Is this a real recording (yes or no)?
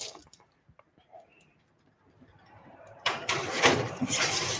no